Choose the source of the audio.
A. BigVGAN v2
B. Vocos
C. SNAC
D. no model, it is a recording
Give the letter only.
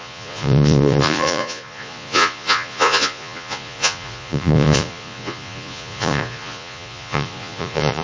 B